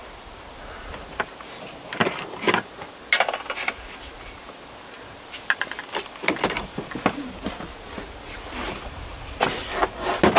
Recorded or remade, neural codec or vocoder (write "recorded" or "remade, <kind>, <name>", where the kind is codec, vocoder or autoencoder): recorded